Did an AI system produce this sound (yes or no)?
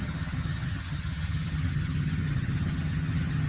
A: yes